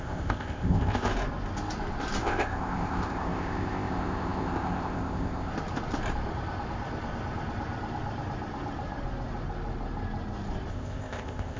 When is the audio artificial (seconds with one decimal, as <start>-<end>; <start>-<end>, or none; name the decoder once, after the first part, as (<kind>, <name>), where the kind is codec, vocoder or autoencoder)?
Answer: 0.0-1.1 (codec, ZipCodec); 2.2-5.5; 10.7-11.6